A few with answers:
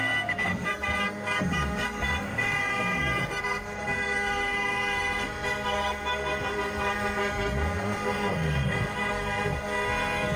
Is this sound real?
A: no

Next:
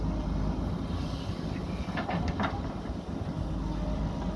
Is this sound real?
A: yes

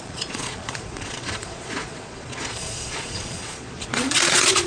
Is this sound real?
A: no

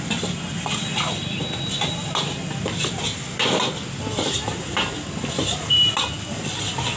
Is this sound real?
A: yes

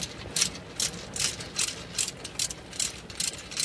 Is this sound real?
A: yes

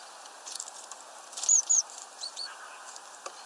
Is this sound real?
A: no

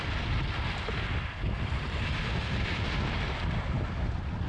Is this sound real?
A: yes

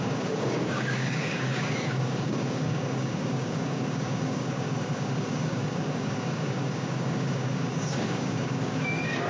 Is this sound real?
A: no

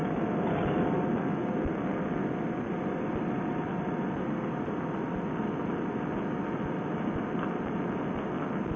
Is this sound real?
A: yes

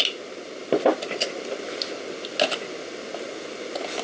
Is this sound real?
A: yes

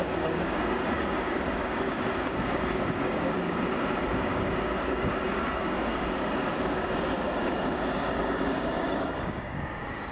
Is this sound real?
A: no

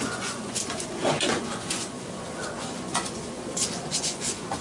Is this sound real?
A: no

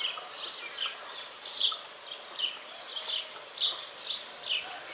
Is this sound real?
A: yes